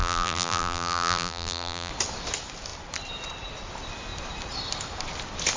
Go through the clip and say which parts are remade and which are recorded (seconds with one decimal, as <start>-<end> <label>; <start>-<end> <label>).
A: 0.0-1.9 remade; 1.9-5.6 recorded